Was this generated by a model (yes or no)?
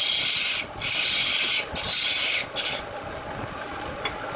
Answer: no